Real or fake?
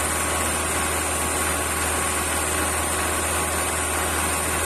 real